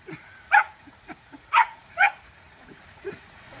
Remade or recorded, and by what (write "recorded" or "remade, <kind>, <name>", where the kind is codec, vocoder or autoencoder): remade, vocoder, Vocos